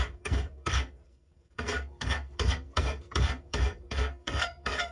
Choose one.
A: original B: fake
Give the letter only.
B